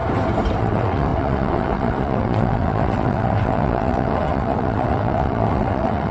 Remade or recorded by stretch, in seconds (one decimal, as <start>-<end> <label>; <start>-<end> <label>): 0.0-0.6 recorded; 0.6-6.1 remade